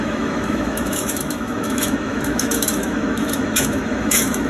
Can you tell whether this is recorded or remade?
remade